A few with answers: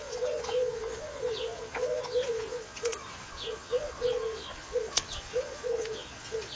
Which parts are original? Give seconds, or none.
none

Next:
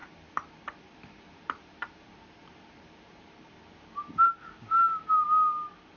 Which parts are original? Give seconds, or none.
3.5-6.0

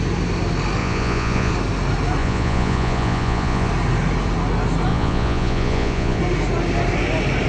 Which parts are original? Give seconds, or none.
0.0-0.8; 1.5-2.2; 3.7-4.9; 6.2-7.5

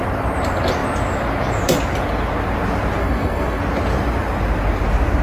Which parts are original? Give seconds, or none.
0.0-3.0; 3.6-5.2

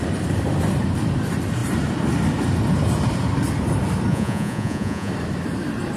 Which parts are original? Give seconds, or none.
0.0-4.1; 5.1-6.0